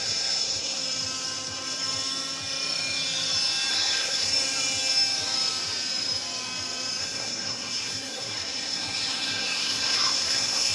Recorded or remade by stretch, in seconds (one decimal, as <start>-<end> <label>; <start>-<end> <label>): 0.0-0.8 remade; 0.8-3.7 recorded; 3.7-4.3 remade; 4.3-7.0 recorded; 7.0-10.7 remade